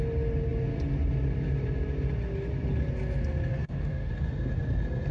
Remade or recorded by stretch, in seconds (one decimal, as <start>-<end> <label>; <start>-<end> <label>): 0.0-3.5 recorded; 3.5-4.1 remade; 4.1-5.1 recorded